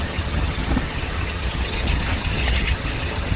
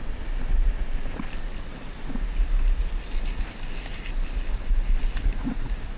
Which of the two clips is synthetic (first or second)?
first